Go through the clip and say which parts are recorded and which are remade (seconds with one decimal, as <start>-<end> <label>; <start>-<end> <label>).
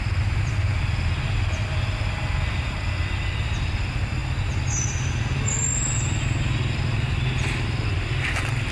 0.0-8.7 recorded